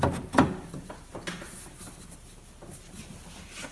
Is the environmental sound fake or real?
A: real